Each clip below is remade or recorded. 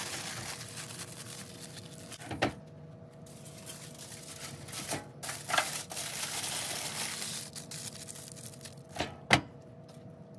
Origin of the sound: recorded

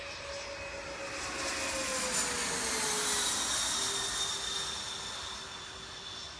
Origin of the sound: recorded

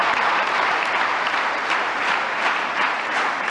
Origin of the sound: remade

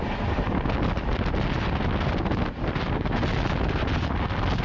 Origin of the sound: recorded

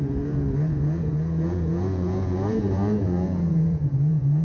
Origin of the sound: remade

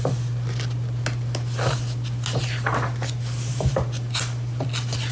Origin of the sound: recorded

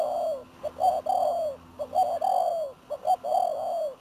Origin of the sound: recorded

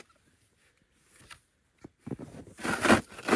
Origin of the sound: recorded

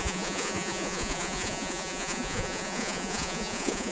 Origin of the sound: remade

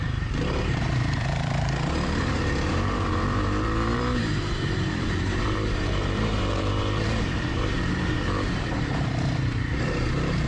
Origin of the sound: remade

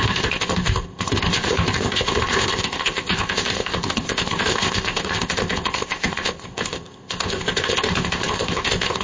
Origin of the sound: remade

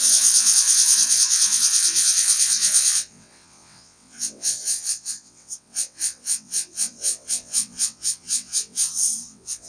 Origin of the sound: remade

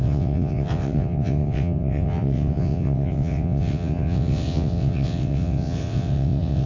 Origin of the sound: remade